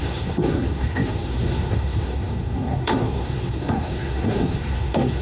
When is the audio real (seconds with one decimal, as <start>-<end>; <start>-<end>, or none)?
none